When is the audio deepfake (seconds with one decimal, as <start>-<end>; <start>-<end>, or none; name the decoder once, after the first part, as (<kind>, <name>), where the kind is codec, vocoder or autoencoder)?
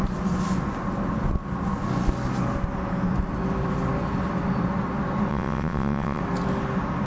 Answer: 5.3-6.2 (vocoder, WaveNeXt)